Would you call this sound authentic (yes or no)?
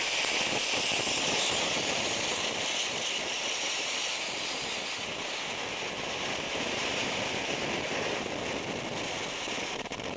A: yes